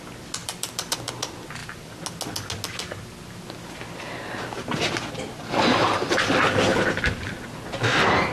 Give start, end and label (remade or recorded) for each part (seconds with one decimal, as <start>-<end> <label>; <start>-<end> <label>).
0.0-0.4 recorded; 0.4-1.1 remade; 1.1-8.3 recorded